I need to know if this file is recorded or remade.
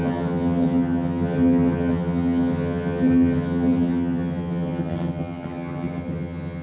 remade